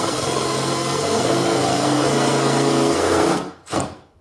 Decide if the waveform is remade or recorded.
remade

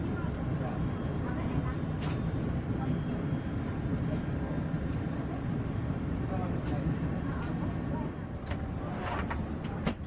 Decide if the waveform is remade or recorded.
recorded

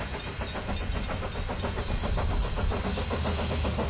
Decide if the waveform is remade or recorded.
recorded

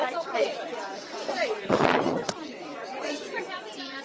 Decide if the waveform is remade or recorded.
remade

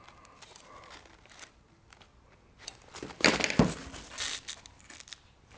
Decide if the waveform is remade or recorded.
recorded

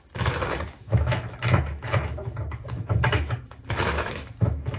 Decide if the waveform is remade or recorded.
remade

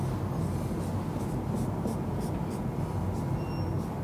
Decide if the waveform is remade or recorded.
recorded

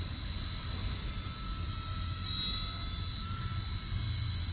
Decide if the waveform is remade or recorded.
recorded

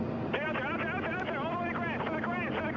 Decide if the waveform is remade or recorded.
recorded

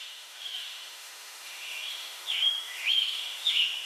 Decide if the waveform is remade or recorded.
remade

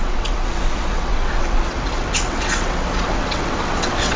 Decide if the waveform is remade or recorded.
remade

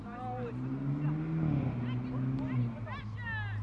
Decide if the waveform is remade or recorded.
recorded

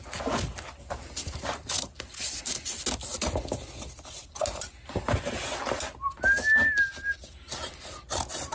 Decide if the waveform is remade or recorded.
recorded